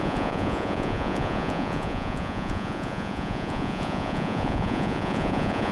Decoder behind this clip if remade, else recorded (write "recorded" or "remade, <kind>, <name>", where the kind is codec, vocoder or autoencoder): remade, vocoder, Vocos